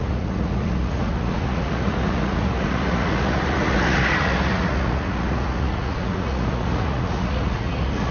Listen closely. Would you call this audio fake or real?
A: fake